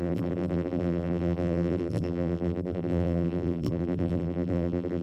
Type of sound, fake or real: fake